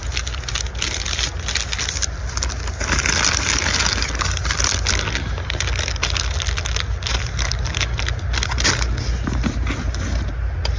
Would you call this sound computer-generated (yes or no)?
no